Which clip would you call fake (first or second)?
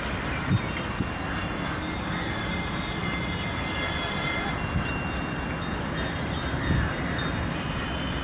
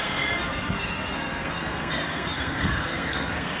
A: second